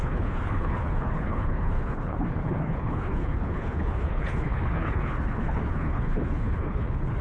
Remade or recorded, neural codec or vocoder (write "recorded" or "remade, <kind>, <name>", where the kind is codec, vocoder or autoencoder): remade, codec, HILCodec